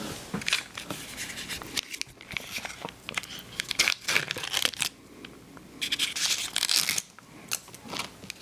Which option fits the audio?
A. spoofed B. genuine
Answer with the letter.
B